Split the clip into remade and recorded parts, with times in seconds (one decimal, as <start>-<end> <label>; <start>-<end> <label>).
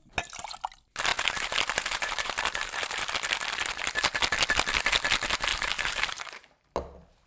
0.0-1.1 recorded; 1.1-3.1 remade; 3.1-5.5 recorded; 5.5-6.7 remade; 6.7-7.3 recorded